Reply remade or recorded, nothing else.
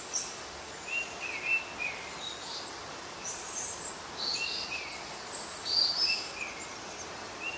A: recorded